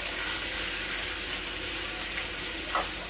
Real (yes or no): yes